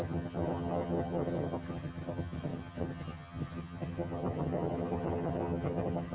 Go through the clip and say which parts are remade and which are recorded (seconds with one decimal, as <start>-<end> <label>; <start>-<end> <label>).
0.0-6.1 remade